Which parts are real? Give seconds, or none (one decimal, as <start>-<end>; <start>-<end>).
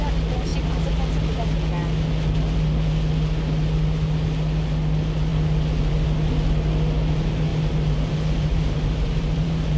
0.0-7.5